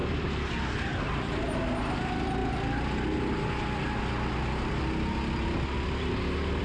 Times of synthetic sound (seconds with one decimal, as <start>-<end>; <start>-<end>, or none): none